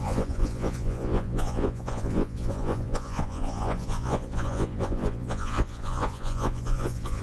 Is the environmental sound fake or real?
fake